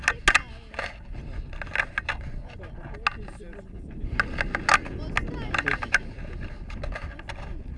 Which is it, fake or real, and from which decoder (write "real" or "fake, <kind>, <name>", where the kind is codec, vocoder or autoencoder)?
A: real